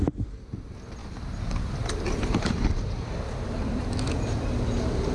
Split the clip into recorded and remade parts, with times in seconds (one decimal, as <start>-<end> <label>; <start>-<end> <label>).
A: 0.0-1.0 recorded; 1.0-4.1 remade; 4.1-5.1 recorded

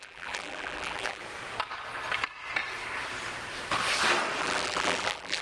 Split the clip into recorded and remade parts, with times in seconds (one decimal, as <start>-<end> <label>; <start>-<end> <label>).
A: 0.0-1.2 remade; 1.2-4.4 recorded; 4.4-5.4 remade

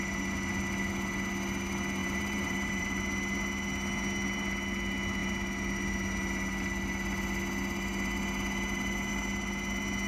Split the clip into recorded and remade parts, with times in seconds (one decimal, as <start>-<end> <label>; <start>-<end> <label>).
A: 0.0-2.0 recorded; 2.0-3.0 remade; 3.0-10.1 recorded

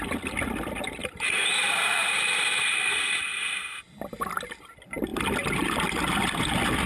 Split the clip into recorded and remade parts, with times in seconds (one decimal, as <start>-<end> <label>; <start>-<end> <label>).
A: 0.0-1.0 recorded; 1.0-2.0 remade; 2.0-6.9 recorded

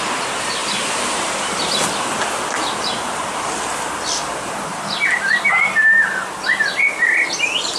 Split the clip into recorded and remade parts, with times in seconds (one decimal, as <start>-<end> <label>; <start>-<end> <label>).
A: 0.0-0.6 recorded; 0.6-1.7 remade; 1.7-4.7 recorded; 4.7-5.5 remade; 5.5-7.8 recorded